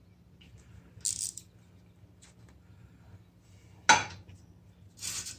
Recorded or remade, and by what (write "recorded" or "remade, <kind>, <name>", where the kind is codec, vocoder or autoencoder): recorded